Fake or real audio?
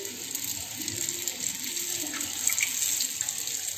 real